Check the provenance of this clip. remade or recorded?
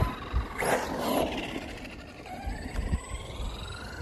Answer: recorded